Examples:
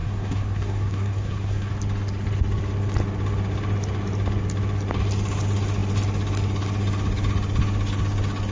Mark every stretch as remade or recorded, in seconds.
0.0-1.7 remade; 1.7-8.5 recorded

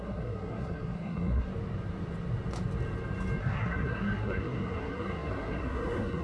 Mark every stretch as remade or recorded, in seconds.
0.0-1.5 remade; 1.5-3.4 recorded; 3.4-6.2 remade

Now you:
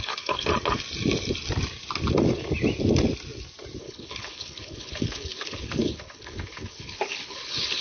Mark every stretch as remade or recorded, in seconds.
0.0-0.5 remade; 0.5-3.8 recorded; 3.8-7.8 remade